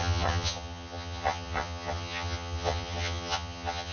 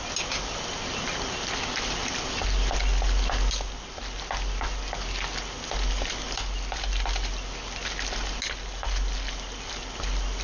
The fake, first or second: first